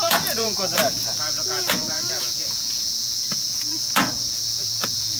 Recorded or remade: remade